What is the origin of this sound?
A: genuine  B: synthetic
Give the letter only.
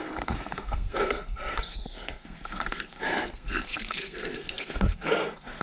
B